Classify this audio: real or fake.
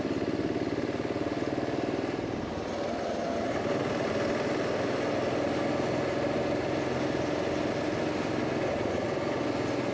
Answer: real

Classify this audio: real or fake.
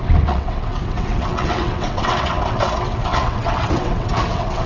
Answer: fake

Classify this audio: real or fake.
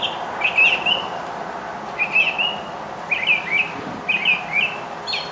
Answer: real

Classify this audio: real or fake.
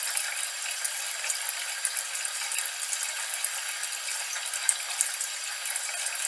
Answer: real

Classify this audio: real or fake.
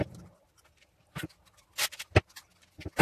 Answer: real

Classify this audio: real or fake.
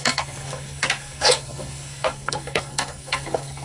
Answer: fake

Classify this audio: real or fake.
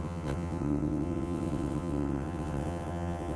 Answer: fake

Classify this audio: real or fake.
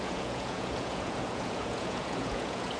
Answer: fake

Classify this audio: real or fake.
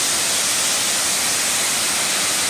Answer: real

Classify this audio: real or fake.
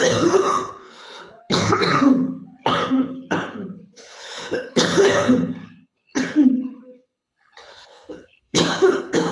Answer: fake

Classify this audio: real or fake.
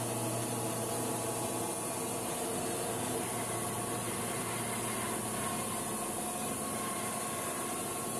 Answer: real